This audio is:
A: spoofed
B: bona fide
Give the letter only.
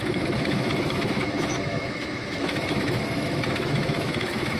A